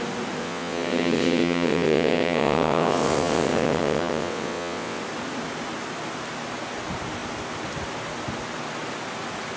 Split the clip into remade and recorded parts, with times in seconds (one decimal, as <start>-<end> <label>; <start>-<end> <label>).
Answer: 0.0-0.4 recorded; 0.4-5.0 remade; 5.0-9.6 recorded